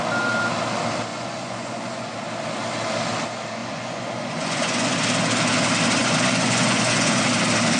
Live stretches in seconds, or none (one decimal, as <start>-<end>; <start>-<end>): 0.0-1.1; 2.1-3.6; 4.9-6.0; 7.2-7.8